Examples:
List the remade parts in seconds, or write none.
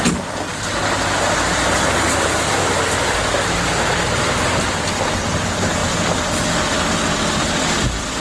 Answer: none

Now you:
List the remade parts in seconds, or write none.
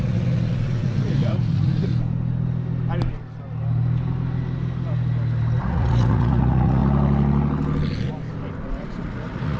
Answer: 0.0-1.9 (vocoder, Vocos); 5.6-6.8; 8.6-9.6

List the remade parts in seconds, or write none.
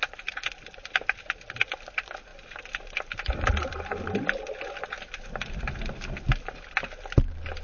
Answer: none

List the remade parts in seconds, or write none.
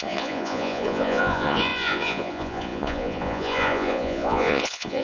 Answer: 0.0-5.0 (vocoder, Vocos)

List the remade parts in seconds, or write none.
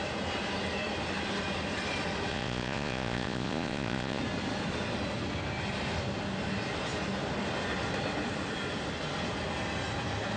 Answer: 2.3-4.2 (vocoder, Vocos)